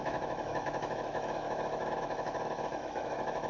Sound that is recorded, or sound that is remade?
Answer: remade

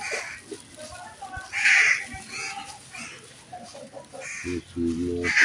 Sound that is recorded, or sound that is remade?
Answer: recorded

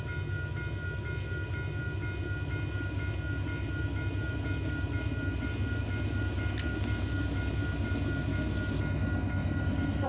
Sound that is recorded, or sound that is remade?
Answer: recorded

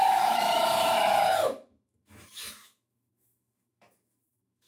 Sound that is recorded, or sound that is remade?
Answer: remade